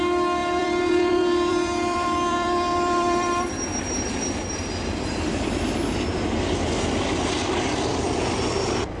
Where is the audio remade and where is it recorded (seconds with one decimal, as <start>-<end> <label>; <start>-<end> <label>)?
0.0-0.4 recorded; 0.4-5.5 remade; 5.5-9.0 recorded